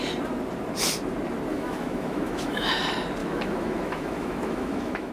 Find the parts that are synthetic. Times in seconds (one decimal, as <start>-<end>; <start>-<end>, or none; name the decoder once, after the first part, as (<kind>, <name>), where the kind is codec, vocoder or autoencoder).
1.5-2.7 (autoencoder, DAC-VAE); 3.2-5.1